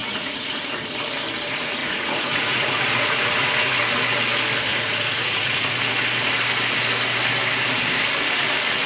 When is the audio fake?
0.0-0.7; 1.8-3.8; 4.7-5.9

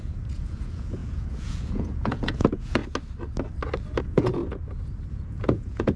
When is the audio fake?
0.0-2.8; 4.0-4.4; 5.1-6.0